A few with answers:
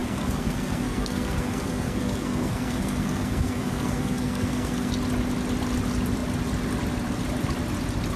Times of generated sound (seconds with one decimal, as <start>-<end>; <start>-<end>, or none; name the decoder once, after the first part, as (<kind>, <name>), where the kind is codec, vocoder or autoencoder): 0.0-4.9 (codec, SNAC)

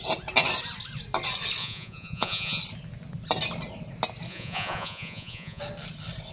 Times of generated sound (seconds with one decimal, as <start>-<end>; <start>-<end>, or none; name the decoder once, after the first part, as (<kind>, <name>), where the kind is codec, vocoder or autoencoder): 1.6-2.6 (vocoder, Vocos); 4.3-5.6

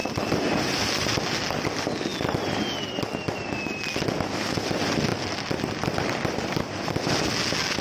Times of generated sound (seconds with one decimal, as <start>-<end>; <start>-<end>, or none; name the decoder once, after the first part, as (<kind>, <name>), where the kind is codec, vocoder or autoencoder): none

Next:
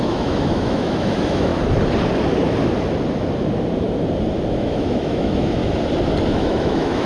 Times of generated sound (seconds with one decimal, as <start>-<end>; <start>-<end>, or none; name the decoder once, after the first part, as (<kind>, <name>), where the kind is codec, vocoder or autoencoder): 0.0-1.5 (autoencoder, DAC-VAE); 4.5-5.6; 6.3-7.1

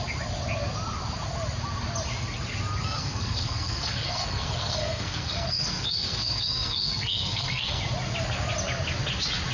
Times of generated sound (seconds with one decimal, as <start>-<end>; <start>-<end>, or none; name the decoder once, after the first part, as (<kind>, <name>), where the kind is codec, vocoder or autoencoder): 2.8-7.8 (codec, SNAC)

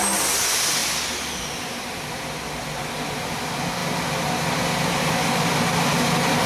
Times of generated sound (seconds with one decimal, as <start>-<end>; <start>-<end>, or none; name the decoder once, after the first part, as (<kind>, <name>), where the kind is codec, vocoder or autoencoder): none

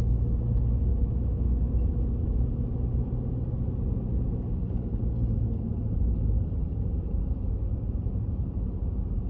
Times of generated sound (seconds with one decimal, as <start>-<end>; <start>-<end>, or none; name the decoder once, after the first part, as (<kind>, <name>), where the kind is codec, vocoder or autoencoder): 0.9-1.6 (autoencoder, DAC-VAE)

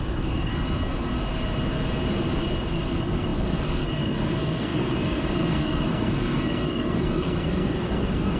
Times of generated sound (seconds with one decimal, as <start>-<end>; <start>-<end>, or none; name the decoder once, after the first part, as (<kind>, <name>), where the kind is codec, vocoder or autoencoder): 0.0-0.5 (codec, SNAC); 2.7-8.4